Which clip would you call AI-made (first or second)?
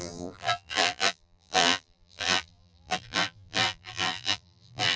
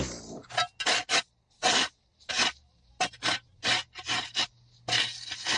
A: first